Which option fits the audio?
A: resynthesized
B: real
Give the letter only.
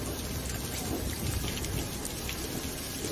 B